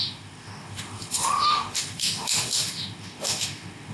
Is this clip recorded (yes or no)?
no